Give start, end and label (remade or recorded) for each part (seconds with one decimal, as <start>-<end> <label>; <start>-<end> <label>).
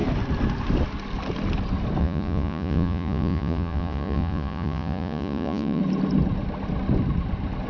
0.0-2.0 recorded; 2.0-5.8 remade; 5.8-7.7 recorded